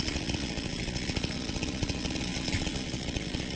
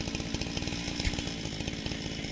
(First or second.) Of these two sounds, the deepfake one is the first